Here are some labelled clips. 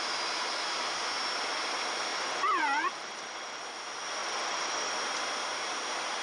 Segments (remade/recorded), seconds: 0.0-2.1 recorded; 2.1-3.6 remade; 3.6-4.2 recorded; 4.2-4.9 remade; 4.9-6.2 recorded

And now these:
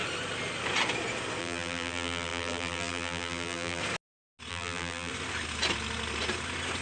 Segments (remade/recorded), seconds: 0.0-1.4 recorded; 1.4-3.8 remade; 3.8-4.5 recorded; 4.5-5.1 remade; 5.1-6.8 recorded

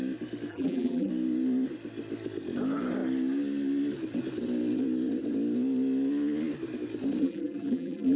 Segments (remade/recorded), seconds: 0.0-0.5 recorded; 0.5-1.1 remade; 1.1-7.2 recorded; 7.2-8.2 remade

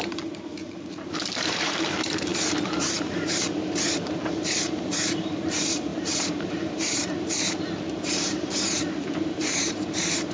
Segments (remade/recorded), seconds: 0.0-10.3 remade